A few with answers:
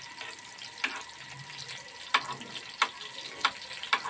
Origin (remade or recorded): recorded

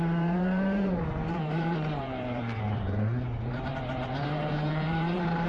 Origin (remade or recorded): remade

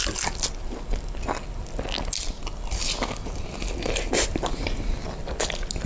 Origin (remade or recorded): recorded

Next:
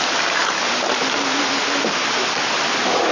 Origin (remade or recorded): recorded